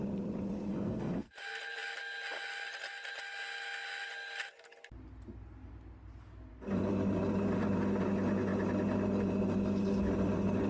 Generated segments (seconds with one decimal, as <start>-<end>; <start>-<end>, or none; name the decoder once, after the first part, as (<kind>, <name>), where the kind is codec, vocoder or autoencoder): 0.7-1.3 (codec, SNAC)

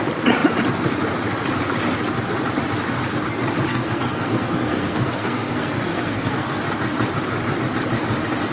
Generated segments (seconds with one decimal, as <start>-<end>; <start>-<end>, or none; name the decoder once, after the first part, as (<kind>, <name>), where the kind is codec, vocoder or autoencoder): 3.7-6.6 (codec, SNAC)

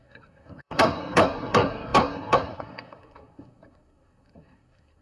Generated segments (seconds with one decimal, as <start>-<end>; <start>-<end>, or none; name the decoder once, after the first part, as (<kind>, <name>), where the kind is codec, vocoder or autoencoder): 0.0-5.0 (codec, SNAC)

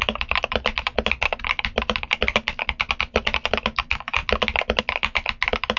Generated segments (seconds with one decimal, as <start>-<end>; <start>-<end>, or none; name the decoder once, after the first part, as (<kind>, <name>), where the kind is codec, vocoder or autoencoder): none